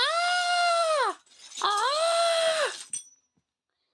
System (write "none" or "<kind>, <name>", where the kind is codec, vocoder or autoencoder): none